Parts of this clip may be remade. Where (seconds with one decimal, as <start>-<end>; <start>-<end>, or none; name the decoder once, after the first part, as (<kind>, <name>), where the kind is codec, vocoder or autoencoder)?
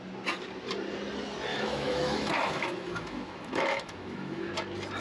1.5-4.5 (autoencoder, DAC-VAE)